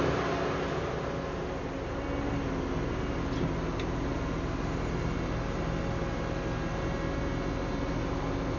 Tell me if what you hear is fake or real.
real